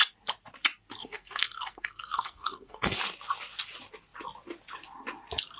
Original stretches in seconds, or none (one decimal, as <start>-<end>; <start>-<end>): 0.0-1.0; 3.0-5.6